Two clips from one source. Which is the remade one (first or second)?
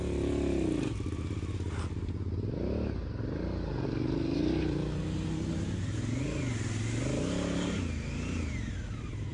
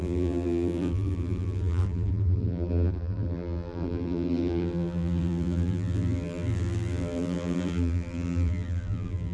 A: second